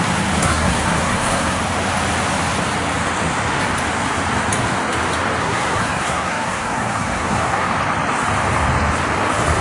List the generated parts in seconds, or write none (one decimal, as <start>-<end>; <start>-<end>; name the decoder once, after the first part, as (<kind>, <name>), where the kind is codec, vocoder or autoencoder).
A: 0.4-1.6 (codec, SNAC); 5.4-7.7